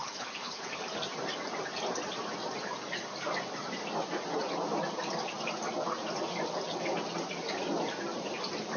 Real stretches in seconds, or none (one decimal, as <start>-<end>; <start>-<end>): 0.8-8.8